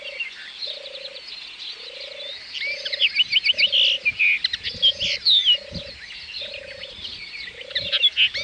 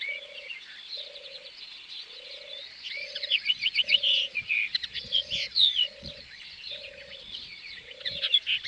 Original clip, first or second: first